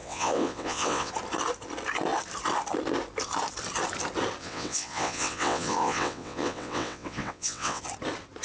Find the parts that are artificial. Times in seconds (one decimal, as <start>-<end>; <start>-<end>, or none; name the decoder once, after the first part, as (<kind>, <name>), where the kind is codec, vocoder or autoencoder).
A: 0.0-1.1 (vocoder, WaveNeXt); 4.4-7.8